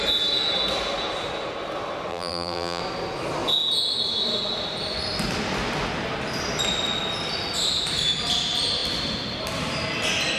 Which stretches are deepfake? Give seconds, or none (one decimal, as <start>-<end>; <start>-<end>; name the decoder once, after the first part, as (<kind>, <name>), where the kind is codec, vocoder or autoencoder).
2.1-2.8 (vocoder, BigVGAN v2)